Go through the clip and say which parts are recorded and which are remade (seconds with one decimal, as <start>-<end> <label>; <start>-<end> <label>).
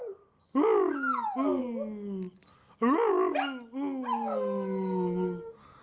0.0-5.8 recorded